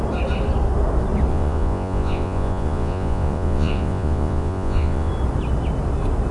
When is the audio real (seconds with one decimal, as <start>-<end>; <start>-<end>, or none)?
0.0-1.3; 5.1-6.3

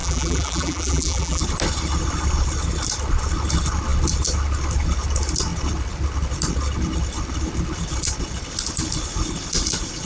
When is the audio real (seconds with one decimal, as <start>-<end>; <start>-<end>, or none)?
1.4-10.1